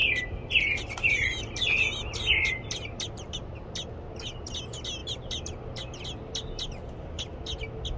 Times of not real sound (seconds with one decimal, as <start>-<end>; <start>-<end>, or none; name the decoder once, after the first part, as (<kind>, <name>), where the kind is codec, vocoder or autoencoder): none